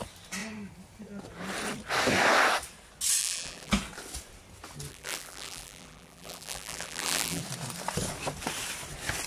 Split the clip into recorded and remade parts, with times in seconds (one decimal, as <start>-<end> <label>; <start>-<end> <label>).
0.0-3.2 recorded; 3.2-3.7 remade; 3.7-4.9 recorded; 4.9-7.4 remade; 7.4-9.3 recorded